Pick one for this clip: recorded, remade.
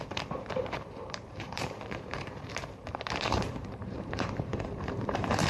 remade